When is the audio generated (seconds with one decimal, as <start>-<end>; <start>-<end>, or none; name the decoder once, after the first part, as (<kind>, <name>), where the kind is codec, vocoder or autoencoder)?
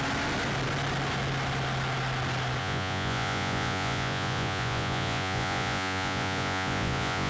2.6-7.3 (vocoder, Vocos)